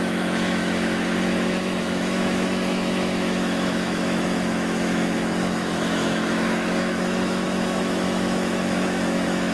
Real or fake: fake